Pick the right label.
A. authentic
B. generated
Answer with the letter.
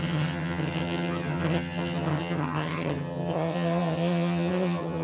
B